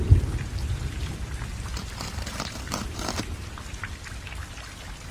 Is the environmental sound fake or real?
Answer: real